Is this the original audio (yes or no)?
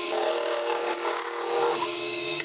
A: no